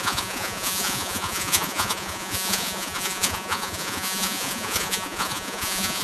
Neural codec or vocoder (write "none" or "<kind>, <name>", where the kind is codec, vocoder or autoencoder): vocoder, Vocos